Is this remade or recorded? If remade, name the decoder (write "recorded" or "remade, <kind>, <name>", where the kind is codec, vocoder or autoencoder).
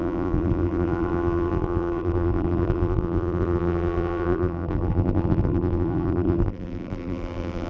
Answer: remade, vocoder, BigVGAN v2